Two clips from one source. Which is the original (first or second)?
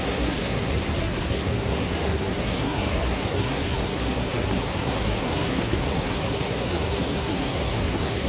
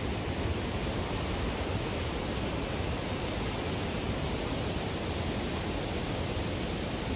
second